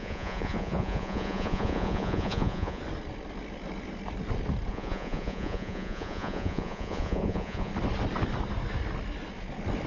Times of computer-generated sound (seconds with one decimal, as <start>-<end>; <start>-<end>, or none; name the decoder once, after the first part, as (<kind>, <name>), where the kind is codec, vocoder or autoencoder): 0.0-2.8 (vocoder, Vocos); 4.7-7.7